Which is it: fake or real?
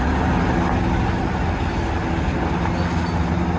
real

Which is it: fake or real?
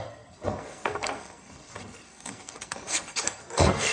fake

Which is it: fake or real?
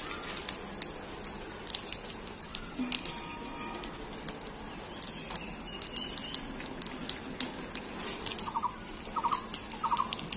real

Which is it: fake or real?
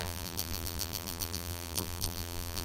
fake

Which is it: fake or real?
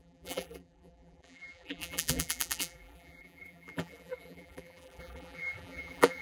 fake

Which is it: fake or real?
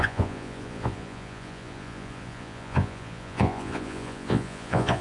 fake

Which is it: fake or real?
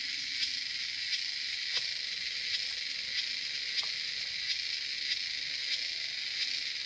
real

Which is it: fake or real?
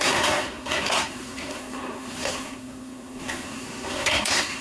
fake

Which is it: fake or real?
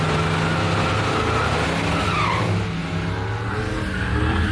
real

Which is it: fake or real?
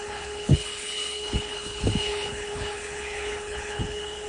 fake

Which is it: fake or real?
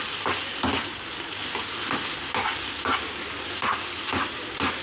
real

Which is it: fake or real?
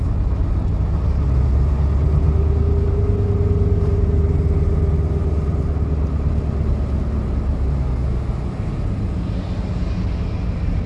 real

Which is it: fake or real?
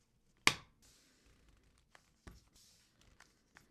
real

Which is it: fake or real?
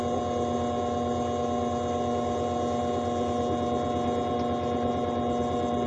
real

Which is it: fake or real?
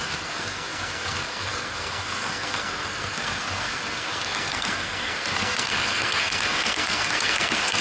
fake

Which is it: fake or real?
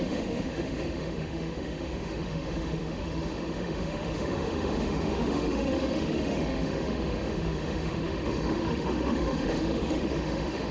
fake